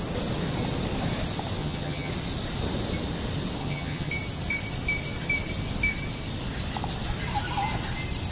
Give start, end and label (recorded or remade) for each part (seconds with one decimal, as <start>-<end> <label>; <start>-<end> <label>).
0.0-1.6 recorded; 1.6-2.1 remade; 2.1-3.6 recorded; 3.6-4.1 remade; 4.1-8.3 recorded